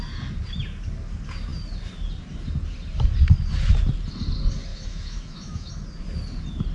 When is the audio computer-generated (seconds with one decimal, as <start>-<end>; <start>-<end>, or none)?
4.7-5.7